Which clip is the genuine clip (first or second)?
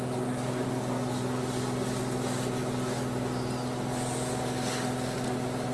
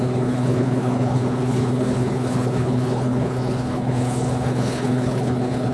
first